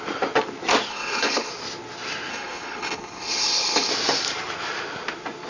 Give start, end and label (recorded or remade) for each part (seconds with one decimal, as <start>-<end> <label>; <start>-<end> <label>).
0.0-0.9 recorded; 0.9-1.5 remade; 1.5-2.3 recorded; 2.3-3.9 remade; 3.9-5.5 recorded